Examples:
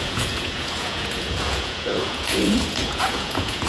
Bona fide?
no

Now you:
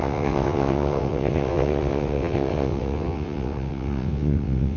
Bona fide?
no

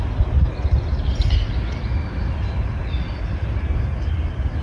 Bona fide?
yes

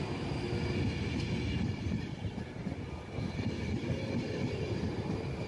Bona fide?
yes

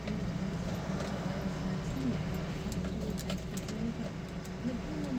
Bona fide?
yes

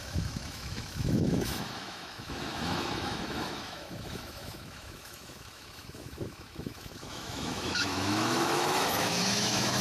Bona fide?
no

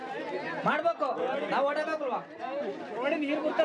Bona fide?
yes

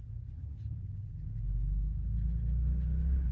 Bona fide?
yes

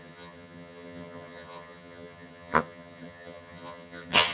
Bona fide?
no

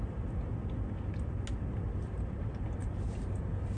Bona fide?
yes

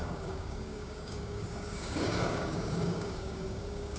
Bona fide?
no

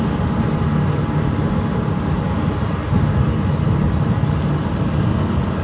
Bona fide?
yes